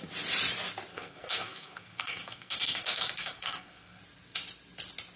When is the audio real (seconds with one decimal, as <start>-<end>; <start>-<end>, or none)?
0.0-0.9; 4.0-5.2